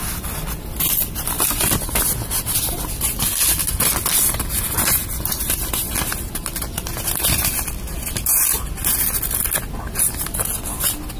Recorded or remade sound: recorded